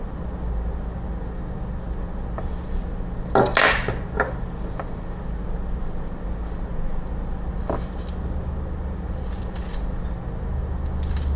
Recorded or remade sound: recorded